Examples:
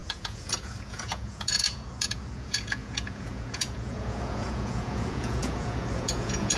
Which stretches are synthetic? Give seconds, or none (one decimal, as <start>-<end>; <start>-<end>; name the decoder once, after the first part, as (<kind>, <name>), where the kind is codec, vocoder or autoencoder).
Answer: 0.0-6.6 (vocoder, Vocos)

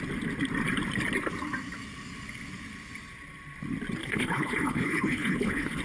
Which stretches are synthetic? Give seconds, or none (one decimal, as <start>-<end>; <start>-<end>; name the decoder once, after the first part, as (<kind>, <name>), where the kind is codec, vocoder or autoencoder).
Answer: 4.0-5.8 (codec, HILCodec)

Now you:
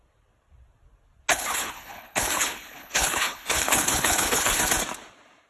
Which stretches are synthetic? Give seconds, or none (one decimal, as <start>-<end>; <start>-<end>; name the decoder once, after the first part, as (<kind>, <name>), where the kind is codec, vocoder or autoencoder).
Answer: 1.3-4.6 (codec, HILCodec)